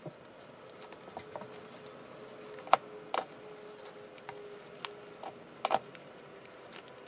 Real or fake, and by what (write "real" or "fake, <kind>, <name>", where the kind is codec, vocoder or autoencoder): real